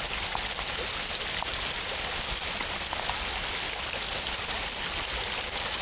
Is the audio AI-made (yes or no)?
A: no